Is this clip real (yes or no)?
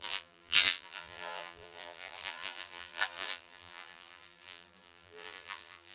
no